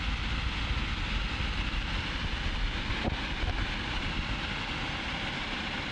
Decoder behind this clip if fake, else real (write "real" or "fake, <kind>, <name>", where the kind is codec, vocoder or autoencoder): real